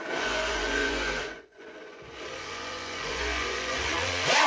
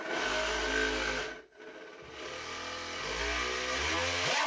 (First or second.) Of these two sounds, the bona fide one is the second